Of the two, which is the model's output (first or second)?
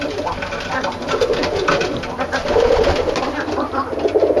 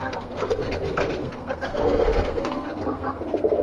second